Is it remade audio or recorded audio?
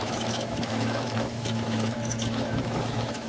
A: remade